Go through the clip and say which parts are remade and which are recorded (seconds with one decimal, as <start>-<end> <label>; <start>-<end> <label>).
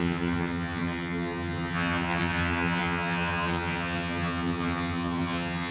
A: 0.0-5.7 remade